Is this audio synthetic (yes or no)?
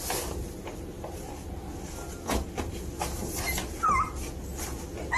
no